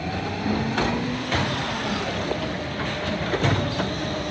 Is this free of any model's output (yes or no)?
yes